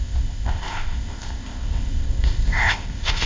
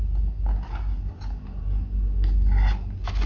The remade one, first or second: first